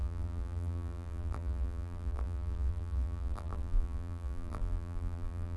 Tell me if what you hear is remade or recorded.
remade